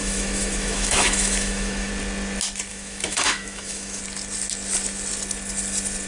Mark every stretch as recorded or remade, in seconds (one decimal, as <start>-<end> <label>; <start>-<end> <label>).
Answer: 0.0-1.9 remade; 1.9-2.7 recorded; 2.7-4.0 remade; 4.0-6.1 recorded